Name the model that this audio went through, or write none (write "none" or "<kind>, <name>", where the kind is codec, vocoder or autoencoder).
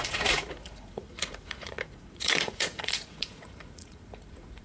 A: vocoder, Vocos